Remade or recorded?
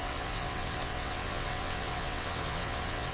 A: remade